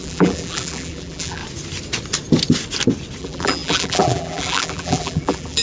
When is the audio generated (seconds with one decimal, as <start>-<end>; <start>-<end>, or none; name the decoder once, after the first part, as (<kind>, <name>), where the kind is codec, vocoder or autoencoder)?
0.0-1.4 (vocoder, BigVGAN v2); 3.2-5.6